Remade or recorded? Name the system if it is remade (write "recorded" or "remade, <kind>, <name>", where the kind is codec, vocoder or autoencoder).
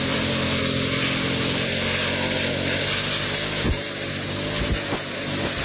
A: recorded